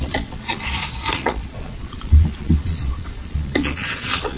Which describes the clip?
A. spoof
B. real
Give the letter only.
A